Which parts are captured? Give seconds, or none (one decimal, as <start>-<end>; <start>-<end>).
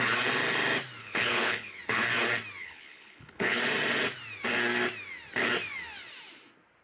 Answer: 0.0-1.0; 1.8-2.6; 3.6-6.8